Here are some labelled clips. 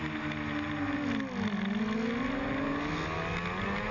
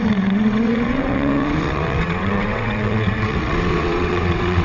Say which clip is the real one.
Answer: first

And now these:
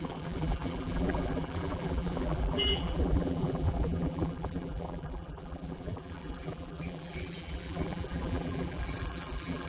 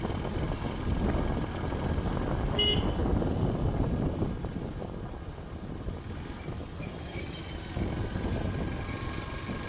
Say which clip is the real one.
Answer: second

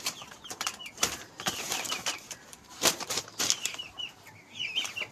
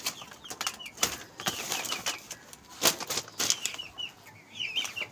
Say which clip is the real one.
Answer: second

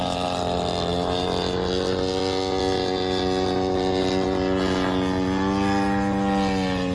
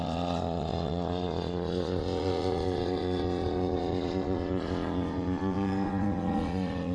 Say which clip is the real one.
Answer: first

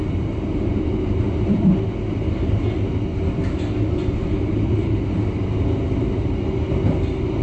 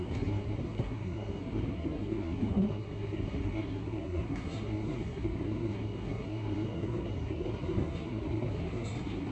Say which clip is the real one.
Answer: first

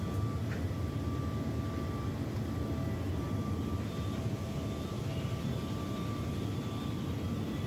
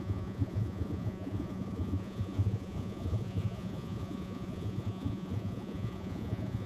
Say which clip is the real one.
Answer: first